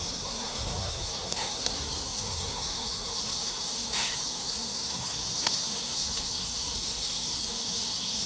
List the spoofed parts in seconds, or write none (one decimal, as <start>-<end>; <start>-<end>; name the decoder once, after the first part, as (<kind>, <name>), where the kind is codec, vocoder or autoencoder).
0.0-8.3 (codec, SNAC)